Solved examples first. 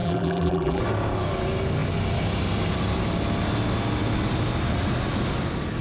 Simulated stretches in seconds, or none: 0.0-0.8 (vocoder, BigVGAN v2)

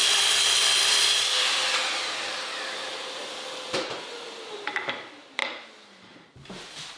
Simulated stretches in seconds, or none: 0.0-5.4 (vocoder, BigVGAN v2); 6.5-7.0

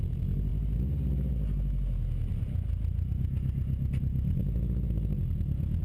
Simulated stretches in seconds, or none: 0.0-0.5 (vocoder, BigVGAN v2); 4.0-5.8

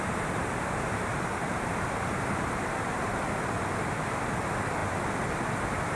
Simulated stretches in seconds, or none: 1.4-3.2 (vocoder, BigVGAN v2)

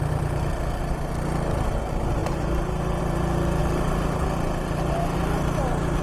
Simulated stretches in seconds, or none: 3.6-5.6 (vocoder, BigVGAN v2)

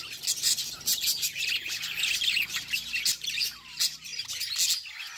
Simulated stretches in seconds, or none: 0.0-4.1 (vocoder, BigVGAN v2)

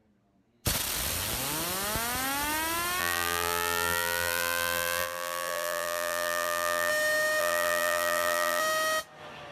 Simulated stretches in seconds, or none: 3.0-6.9 (vocoder, BigVGAN v2); 7.4-8.6

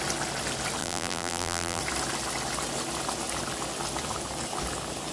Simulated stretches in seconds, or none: 0.8-1.8 (vocoder, BigVGAN v2)